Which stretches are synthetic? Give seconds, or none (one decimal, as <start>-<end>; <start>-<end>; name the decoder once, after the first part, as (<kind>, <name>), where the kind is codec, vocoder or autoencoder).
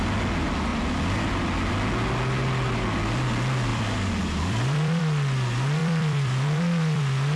0.7-1.3 (vocoder, BigVGAN v2); 3.7-5.0; 5.8-7.0